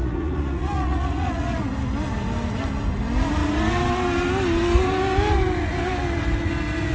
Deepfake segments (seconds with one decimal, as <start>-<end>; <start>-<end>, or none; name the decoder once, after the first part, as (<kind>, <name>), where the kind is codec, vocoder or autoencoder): 0.0-1.6 (vocoder, Vocos)